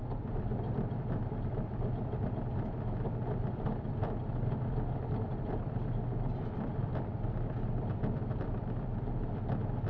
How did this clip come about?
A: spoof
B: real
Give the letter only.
A